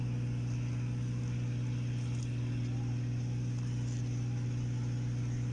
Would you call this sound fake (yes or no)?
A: no